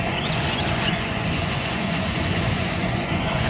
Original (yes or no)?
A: no